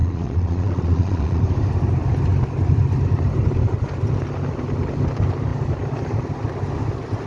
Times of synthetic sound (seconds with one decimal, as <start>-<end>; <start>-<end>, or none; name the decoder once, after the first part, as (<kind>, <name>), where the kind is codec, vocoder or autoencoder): 0.0-1.4 (vocoder, Vocos)